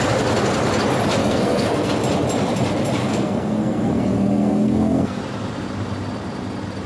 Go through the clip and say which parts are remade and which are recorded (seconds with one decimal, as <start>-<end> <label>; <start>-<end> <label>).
0.0-1.2 recorded; 1.2-1.9 remade; 1.9-3.0 recorded; 3.0-5.2 remade; 5.2-6.9 recorded